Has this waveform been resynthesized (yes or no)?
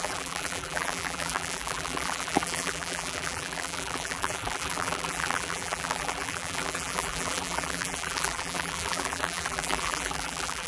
yes